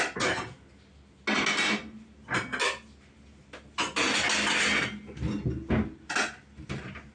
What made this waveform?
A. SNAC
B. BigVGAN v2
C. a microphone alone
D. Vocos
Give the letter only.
C